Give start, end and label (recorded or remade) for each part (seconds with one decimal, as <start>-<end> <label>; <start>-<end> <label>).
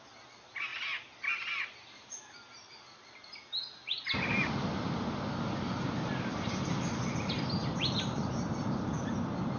0.0-9.6 recorded